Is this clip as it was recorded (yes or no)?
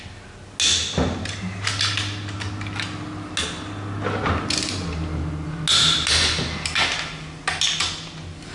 yes